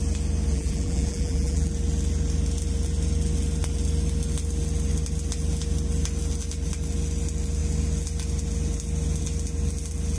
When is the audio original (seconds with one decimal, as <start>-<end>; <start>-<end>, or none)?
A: 0.0-0.5; 1.7-10.2